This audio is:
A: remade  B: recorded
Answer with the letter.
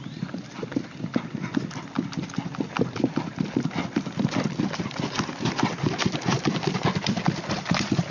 B